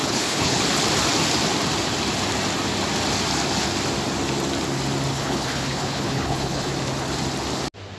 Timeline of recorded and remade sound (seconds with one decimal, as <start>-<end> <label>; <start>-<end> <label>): 0.0-0.6 remade; 0.6-5.1 recorded; 5.1-6.7 remade; 6.7-8.0 recorded